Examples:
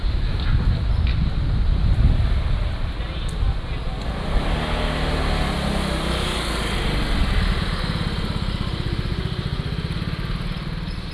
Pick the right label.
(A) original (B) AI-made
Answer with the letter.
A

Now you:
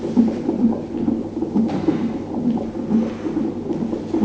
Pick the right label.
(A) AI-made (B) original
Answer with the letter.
B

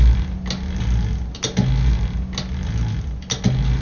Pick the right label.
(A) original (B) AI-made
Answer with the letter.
A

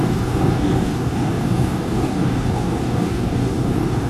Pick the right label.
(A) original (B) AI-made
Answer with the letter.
B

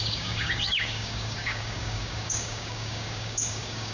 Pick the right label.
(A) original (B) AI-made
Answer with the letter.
B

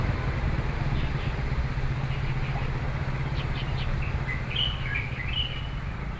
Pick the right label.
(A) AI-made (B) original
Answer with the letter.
B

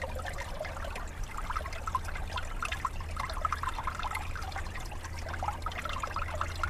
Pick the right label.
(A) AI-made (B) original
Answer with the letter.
B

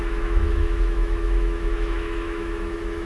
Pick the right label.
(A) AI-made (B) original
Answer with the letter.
A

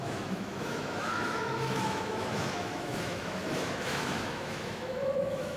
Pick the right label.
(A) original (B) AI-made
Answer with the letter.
B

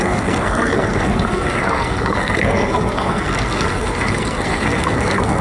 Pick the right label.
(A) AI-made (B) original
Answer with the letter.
A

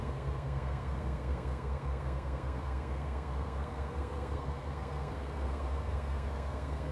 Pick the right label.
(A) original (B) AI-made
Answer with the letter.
B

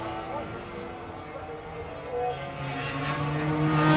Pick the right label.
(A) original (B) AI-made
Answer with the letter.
A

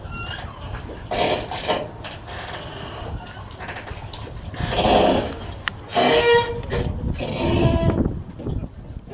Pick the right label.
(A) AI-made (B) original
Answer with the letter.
B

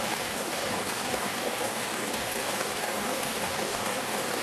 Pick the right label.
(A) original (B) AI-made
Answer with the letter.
B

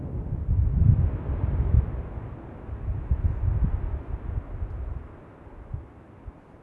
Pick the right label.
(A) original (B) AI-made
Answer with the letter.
A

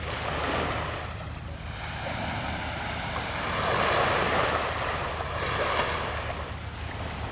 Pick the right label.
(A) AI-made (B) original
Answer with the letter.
B